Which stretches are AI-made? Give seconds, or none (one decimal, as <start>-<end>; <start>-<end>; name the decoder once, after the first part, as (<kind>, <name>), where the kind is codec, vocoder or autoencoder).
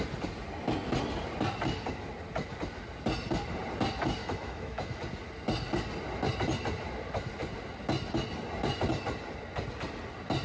4.2-5.0 (autoencoder, DAC-VAE)